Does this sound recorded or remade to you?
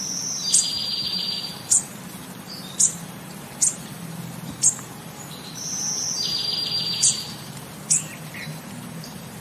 remade